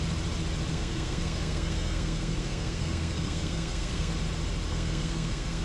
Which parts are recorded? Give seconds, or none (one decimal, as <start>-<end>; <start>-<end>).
0.0-0.7; 4.1-4.7